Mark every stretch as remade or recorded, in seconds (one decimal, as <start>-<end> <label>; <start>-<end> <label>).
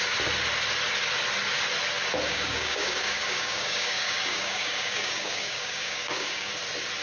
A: 0.0-2.3 recorded; 2.3-6.5 remade; 6.5-7.0 recorded